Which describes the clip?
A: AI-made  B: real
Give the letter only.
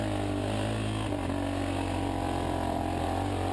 B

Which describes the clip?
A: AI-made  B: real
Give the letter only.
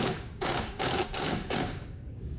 A